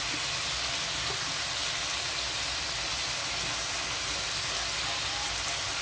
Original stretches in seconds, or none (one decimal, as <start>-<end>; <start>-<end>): 0.0-5.8

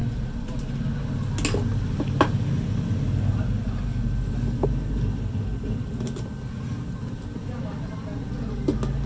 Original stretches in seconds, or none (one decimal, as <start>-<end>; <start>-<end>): 0.0-9.1

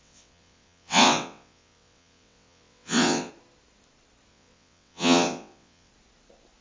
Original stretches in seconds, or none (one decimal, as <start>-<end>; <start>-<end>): 3.3-4.3; 5.9-6.6

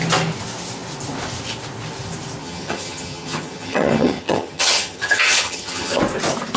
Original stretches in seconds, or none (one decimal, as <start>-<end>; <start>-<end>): 0.0-2.4; 6.0-6.6

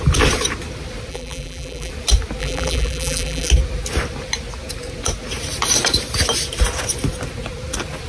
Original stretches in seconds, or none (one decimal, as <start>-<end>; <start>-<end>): 0.0-1.1; 1.9-2.4; 3.5-8.1

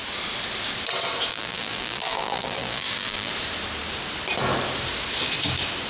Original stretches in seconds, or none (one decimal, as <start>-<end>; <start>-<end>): 0.0-1.3; 3.3-5.9